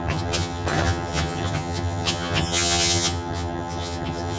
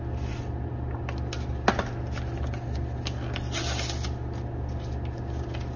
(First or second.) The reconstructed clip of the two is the first